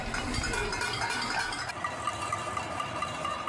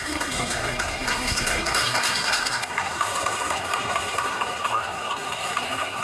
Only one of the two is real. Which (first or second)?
first